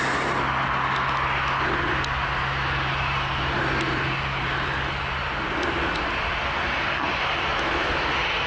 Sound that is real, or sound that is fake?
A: real